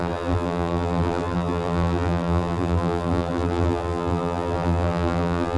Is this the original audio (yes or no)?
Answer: no